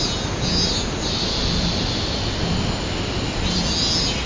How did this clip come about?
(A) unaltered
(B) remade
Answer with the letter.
A